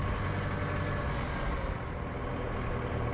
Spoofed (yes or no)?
no